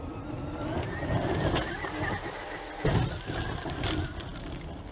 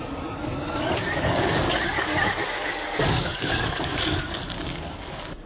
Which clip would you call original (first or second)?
first